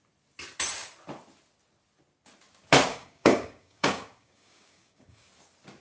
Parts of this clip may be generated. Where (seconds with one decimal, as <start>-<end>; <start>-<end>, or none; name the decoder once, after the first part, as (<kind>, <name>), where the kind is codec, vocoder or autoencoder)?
2.9-5.3 (codec, DAC)